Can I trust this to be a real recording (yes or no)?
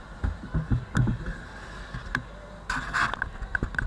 yes